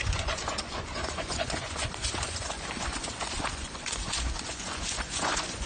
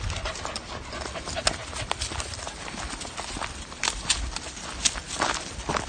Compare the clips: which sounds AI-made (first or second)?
first